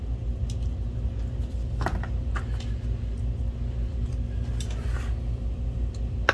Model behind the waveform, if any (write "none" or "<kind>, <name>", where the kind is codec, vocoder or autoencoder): none